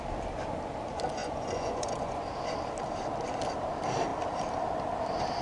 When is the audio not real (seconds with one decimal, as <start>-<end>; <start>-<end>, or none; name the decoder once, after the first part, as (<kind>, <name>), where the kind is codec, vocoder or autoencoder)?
1.2-2.3 (vocoder, Vocos)